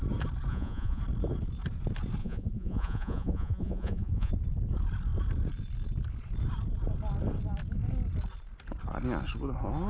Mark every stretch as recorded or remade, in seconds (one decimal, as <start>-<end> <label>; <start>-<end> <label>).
0.0-0.5 recorded; 0.5-1.0 remade; 1.0-2.2 recorded; 2.2-4.3 remade; 4.3-9.9 recorded